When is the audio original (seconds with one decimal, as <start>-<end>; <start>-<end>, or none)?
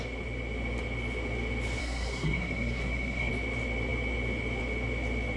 0.0-1.8; 3.3-5.4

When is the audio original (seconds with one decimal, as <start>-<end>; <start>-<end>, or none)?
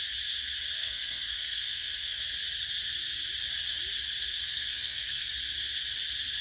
0.0-0.8; 2.2-4.5; 5.3-6.4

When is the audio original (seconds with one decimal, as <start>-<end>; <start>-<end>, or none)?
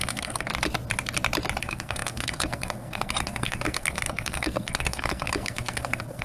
0.5-1.6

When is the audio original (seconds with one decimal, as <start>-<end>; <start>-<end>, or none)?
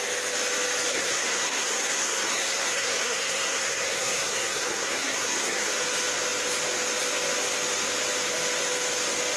0.0-0.9; 5.7-9.4